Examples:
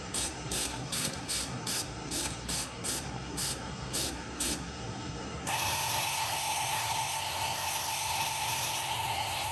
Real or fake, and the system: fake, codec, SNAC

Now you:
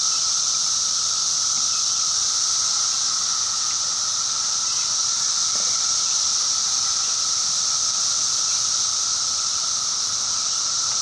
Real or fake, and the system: fake, vocoder, BigVGAN v2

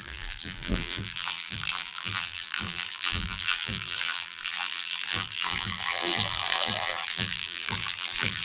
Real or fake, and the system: fake, vocoder, BigVGAN v2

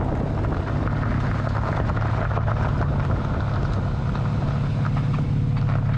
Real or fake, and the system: real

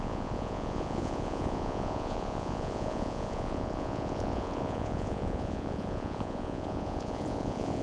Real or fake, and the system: fake, vocoder, Vocos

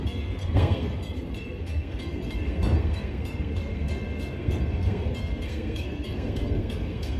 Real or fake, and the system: fake, codec, SNAC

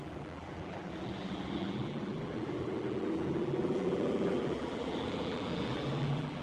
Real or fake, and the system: fake, vocoder, BigVGAN v2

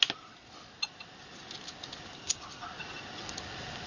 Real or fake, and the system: real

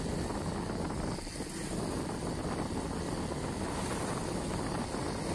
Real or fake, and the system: real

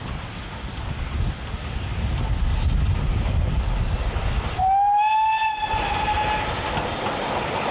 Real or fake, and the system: real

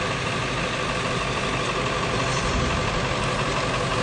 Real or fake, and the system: real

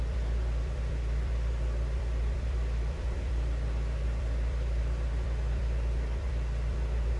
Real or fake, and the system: fake, vocoder, BigVGAN v2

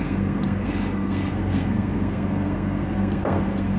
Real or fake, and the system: fake, codec, SNAC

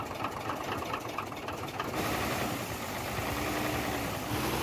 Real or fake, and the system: real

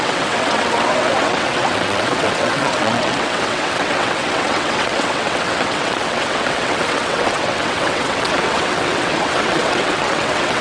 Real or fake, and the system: fake, vocoder, WaveNeXt